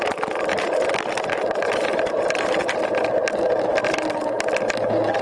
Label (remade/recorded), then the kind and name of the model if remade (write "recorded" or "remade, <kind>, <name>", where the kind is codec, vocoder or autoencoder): recorded